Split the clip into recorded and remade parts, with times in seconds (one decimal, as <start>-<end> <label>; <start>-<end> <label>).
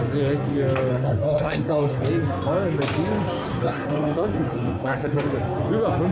0.0-0.9 recorded; 0.9-2.0 remade; 2.0-3.5 recorded; 3.5-5.2 remade; 5.2-6.1 recorded